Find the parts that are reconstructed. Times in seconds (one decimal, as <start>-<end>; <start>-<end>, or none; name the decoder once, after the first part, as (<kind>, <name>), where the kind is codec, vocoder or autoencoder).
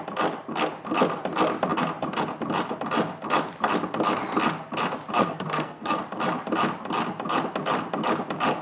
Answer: 5.2-6.0 (codec, SNAC)